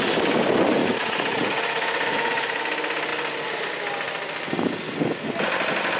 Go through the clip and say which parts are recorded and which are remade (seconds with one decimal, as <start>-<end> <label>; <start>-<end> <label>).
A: 0.0-0.8 recorded; 0.8-2.6 remade; 2.6-6.0 recorded

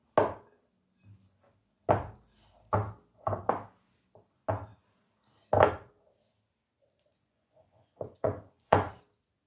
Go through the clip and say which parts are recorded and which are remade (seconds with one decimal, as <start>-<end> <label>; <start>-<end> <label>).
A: 0.0-7.1 recorded; 7.1-8.9 remade; 8.9-9.5 recorded

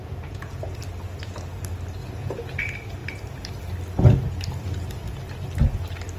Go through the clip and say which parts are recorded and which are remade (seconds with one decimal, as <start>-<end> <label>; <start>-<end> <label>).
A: 0.0-0.8 remade; 0.8-2.0 recorded; 2.0-2.6 remade; 2.6-6.2 recorded